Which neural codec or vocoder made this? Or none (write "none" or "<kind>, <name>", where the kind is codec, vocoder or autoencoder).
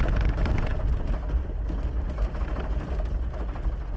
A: none